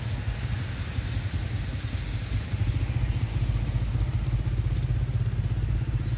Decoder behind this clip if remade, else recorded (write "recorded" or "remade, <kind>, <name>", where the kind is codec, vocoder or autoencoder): recorded